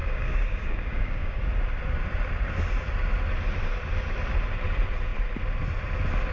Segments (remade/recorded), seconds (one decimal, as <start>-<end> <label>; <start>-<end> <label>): 0.0-1.4 remade; 1.4-6.3 recorded